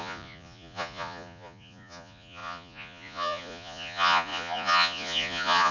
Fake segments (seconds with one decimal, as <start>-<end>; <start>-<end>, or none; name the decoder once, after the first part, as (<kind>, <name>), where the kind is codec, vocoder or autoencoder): 0.0-5.7 (vocoder, Vocos)